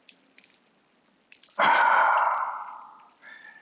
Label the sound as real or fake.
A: real